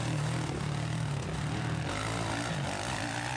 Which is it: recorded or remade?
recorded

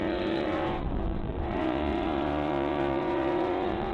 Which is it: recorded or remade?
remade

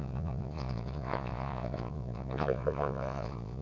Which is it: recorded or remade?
remade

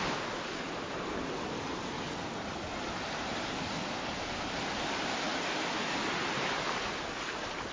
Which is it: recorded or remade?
recorded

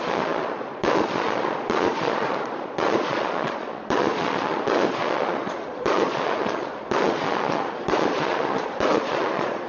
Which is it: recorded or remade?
remade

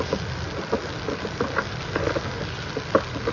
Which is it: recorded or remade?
recorded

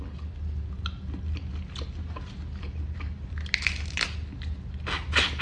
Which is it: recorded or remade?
recorded